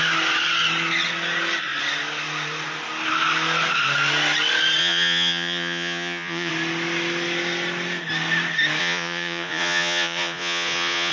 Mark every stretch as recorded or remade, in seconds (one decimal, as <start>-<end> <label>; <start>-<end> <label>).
0.0-4.8 recorded; 4.8-6.5 remade; 6.5-8.8 recorded; 8.8-11.1 remade